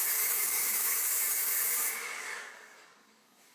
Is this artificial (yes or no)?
yes